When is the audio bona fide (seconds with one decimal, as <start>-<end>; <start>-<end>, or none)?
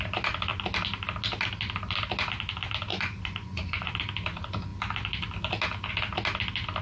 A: 0.0-2.9; 3.9-6.8